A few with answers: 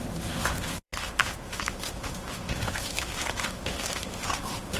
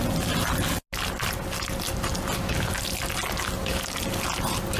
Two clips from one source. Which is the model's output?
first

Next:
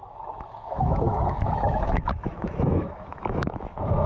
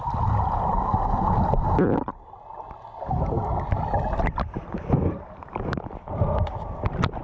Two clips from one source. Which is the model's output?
first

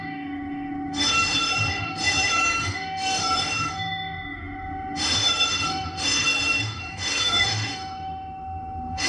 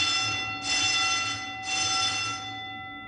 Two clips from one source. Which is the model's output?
first